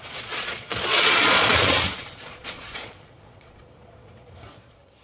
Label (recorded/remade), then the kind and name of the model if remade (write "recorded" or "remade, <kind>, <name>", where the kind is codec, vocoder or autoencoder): remade, vocoder, Vocos